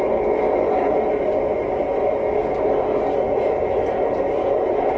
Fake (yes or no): no